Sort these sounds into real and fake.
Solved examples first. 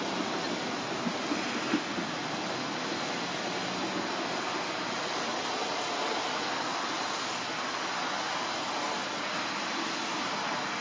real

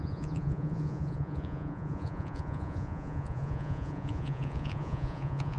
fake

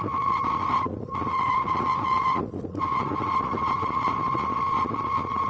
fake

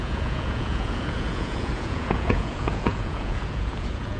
fake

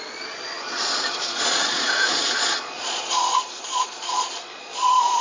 fake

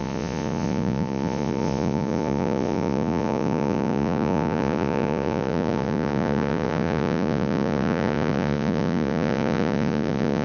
fake